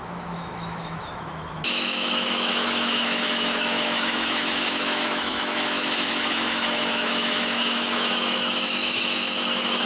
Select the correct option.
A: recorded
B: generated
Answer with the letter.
B